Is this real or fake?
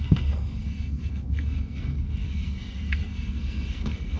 fake